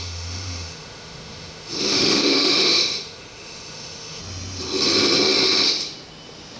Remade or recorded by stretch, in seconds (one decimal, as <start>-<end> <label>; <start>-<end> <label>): 0.0-4.2 remade; 4.2-6.6 recorded